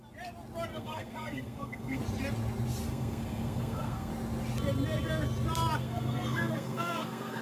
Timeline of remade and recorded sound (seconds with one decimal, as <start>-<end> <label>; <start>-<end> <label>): 0.0-0.7 recorded; 0.7-2.0 remade; 2.0-2.9 recorded; 2.9-4.1 remade; 4.1-5.8 recorded; 5.8-7.4 remade